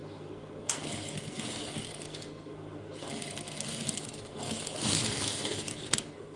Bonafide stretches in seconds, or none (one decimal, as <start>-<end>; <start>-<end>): none